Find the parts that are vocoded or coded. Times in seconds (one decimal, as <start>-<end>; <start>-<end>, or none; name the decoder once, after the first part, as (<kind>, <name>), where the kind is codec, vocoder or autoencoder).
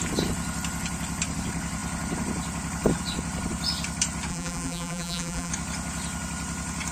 4.3-5.5 (vocoder, BigVGAN v2)